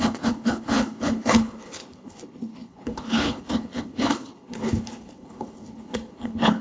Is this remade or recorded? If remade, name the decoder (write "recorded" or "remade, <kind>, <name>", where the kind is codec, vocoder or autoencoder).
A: remade, codec, HILCodec